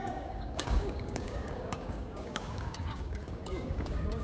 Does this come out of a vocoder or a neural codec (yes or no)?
yes